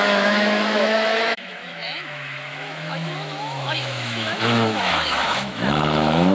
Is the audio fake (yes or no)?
yes